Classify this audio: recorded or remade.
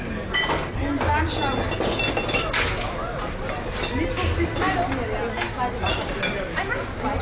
recorded